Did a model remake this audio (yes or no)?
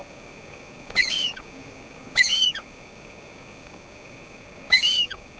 yes